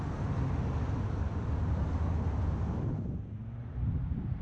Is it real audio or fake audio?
real